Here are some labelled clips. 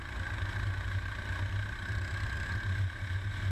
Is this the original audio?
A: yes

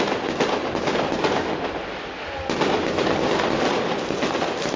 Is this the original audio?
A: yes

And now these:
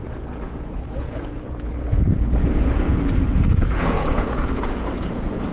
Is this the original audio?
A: no